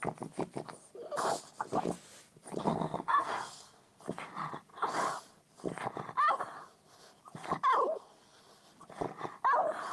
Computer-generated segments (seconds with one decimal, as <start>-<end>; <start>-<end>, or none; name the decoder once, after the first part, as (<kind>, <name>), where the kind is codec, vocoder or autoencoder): 2.6-4.0 (codec, SNAC); 7.9-8.4

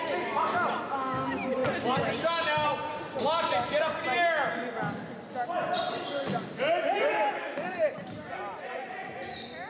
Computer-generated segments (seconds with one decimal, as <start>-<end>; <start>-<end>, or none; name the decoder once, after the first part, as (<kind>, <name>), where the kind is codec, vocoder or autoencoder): none

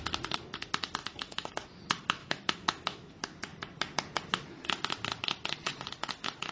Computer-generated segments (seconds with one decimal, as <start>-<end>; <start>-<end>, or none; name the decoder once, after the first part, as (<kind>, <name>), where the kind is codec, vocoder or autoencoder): 1.0-1.5 (autoencoder, DAC-VAE); 2.2-3.1

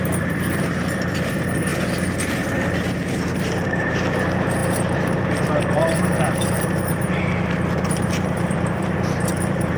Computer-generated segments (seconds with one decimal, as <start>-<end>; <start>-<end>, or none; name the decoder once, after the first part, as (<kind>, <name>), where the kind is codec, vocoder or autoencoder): 0.0-1.7 (vocoder, BigVGAN v2); 2.3-9.8

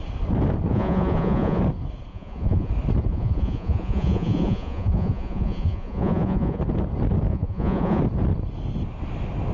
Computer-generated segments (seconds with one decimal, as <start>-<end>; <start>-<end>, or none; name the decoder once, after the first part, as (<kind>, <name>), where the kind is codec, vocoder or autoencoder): 0.7-1.6 (vocoder, Vocos); 2.1-2.7; 3.1-6.6; 7.3-8.0

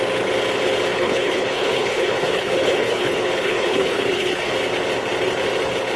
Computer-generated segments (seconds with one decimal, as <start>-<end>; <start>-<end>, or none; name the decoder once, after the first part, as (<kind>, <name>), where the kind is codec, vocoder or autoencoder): 0.9-4.5 (codec, HILCodec)

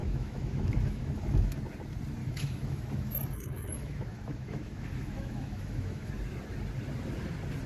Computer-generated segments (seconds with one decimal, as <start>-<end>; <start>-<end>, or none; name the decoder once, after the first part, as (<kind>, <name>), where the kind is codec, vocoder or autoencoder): 0.0-1.6 (autoencoder, DAC-VAE); 2.2-6.1